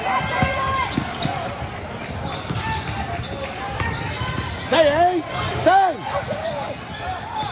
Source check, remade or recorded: recorded